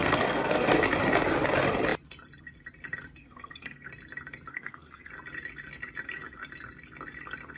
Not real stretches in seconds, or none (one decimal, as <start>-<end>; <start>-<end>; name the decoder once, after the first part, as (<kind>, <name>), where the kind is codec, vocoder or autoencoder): 0.0-0.8 (codec, SNAC); 3.2-3.9; 4.5-5.1